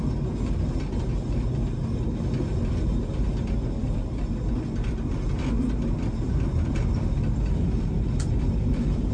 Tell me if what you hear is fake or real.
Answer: real